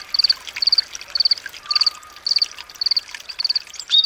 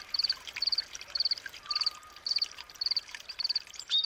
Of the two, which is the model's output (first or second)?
second